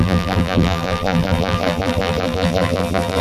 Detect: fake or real fake